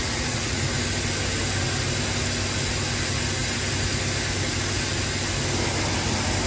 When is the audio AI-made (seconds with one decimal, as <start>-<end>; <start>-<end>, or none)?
0.0-0.6